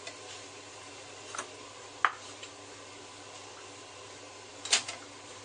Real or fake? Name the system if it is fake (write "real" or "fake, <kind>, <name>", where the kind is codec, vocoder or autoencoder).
real